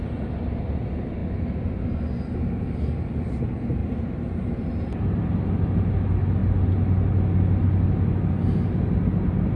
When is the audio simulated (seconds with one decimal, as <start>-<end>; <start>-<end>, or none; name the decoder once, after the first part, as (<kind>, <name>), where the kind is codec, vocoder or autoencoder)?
3.8-5.1 (vocoder, BigVGAN v2)